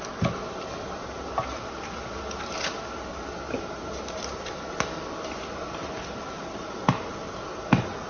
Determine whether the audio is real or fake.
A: real